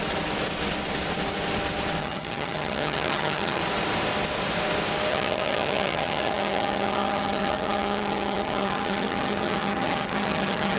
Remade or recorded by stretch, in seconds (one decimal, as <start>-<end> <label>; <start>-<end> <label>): 0.0-2.0 recorded; 2.0-3.6 remade; 3.6-5.1 recorded; 5.1-10.8 remade